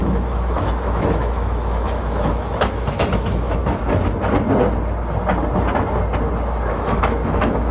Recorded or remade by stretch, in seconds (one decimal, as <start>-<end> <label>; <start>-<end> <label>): 0.0-3.6 remade; 3.6-6.7 recorded; 6.7-7.7 remade